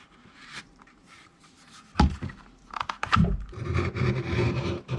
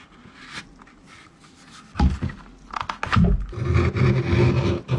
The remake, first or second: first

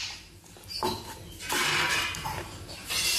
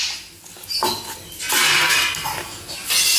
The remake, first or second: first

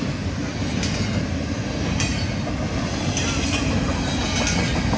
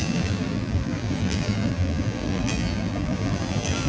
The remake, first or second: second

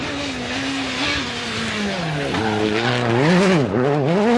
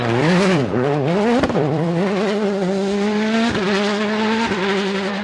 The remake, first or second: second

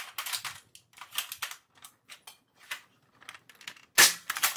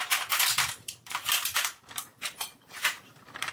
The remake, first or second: second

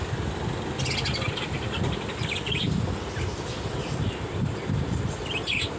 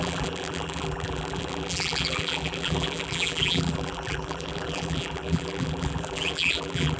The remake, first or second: second